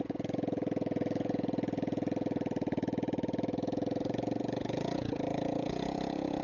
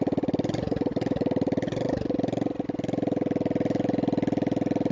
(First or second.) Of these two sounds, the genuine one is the second